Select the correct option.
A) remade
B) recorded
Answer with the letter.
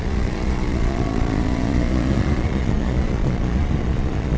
A